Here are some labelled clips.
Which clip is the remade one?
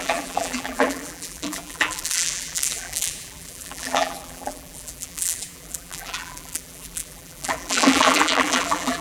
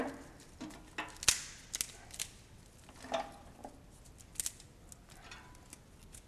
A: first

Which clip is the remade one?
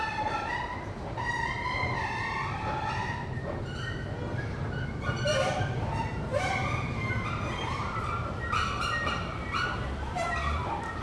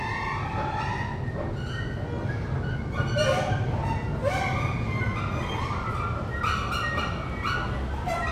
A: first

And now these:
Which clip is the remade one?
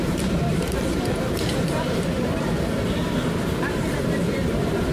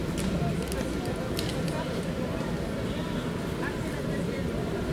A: first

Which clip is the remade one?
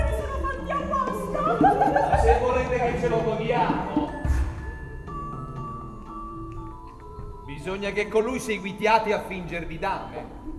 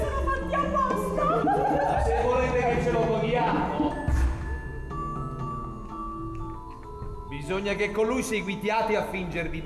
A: first